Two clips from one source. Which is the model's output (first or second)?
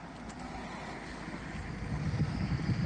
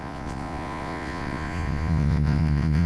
second